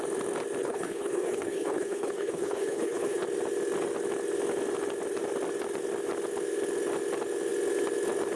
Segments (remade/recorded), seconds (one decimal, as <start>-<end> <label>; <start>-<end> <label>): 0.0-0.6 recorded; 0.6-3.2 remade; 3.2-8.4 recorded